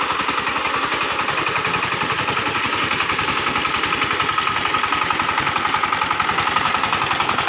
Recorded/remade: recorded